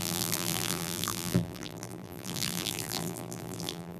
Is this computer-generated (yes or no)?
yes